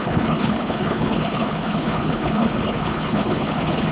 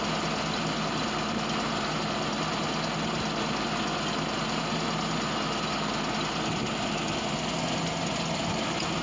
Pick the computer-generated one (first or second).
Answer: first